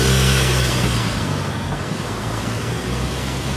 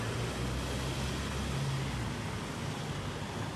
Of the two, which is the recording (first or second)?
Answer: second